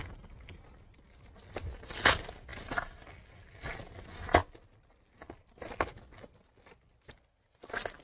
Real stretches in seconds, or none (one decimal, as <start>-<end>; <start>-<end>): 0.0-8.0